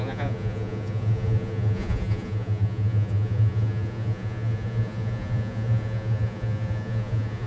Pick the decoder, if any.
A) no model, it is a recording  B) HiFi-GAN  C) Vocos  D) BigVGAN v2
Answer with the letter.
C